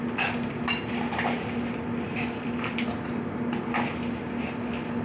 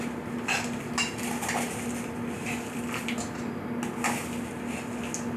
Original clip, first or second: second